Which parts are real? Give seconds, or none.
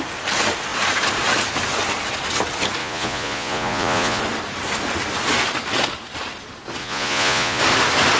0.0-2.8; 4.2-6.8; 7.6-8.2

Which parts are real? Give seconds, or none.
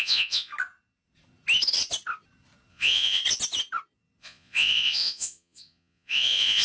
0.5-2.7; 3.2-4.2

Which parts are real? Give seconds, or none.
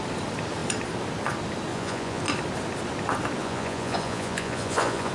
0.0-1.7; 2.2-3.4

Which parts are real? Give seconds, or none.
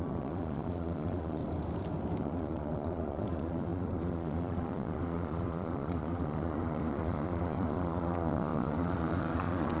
1.4-2.2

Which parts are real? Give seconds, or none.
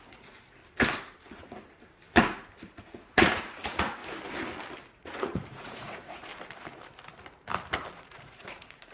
0.6-2.7; 4.0-4.9; 6.3-8.0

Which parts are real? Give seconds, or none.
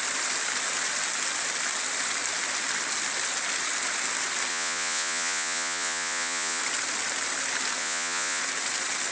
0.0-4.5; 6.6-7.8; 8.4-9.1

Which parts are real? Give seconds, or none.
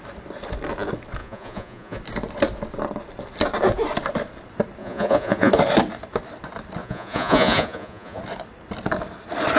0.0-1.2; 2.0-4.8; 5.5-6.8; 8.2-9.6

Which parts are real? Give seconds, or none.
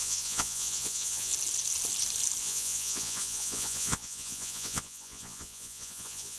1.3-2.4